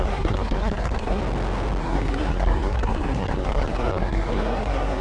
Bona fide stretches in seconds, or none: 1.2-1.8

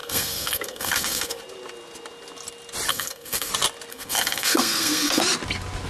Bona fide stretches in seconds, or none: 1.4-2.9; 3.5-3.9; 5.2-5.9